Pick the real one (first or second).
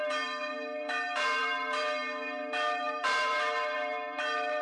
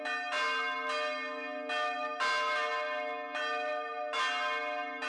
second